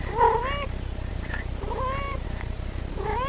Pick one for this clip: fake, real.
real